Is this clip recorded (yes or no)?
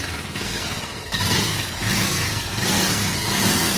no